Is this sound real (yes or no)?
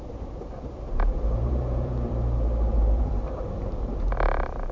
no